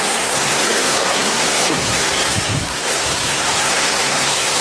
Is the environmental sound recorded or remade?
remade